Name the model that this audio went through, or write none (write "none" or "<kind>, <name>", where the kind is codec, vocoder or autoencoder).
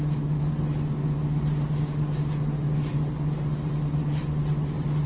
none